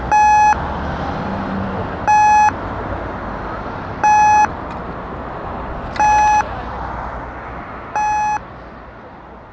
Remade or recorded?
recorded